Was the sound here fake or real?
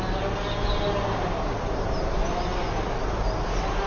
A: real